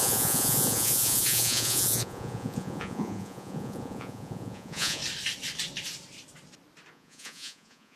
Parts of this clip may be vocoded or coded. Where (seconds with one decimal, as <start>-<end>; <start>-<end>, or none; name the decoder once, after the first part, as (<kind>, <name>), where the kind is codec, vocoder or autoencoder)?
0.0-5.0 (vocoder, Vocos); 6.9-8.0